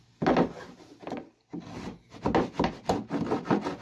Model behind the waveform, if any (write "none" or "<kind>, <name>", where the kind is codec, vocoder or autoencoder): none